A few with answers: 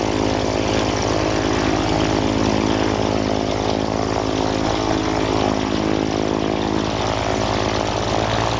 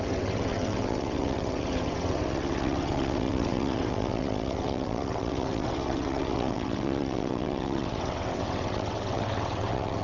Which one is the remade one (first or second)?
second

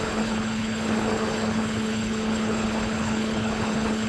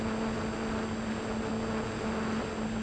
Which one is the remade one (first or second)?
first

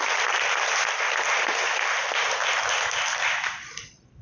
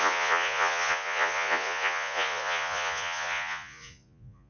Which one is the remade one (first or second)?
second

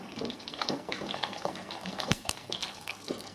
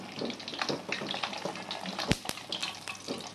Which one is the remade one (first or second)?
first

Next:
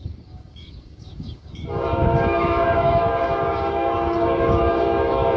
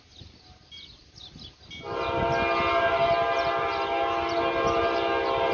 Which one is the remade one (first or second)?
first